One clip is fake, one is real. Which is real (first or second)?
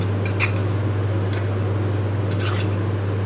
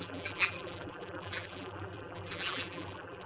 first